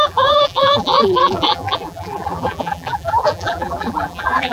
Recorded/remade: remade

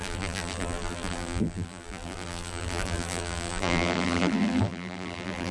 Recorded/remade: remade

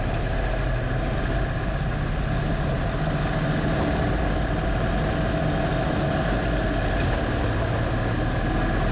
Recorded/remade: recorded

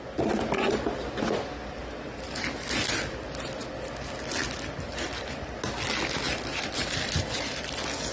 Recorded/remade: recorded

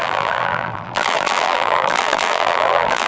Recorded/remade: remade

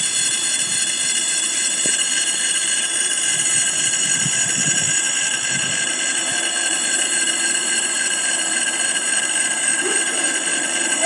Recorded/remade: remade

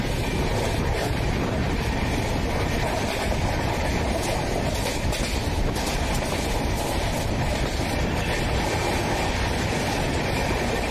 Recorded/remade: recorded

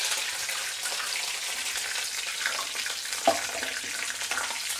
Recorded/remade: recorded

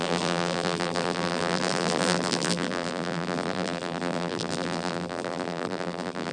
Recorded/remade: remade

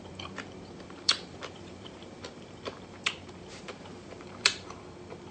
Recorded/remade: remade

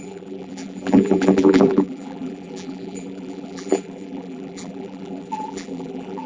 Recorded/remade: remade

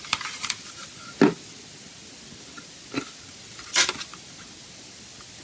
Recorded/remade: recorded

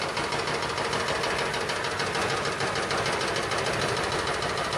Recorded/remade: recorded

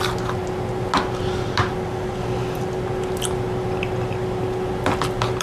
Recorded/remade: recorded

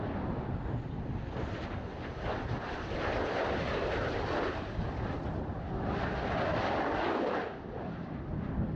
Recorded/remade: recorded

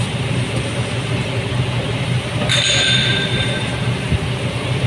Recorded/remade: recorded